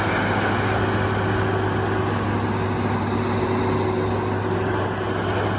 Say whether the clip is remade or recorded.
recorded